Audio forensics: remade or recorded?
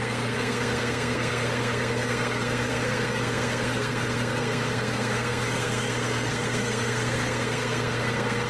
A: remade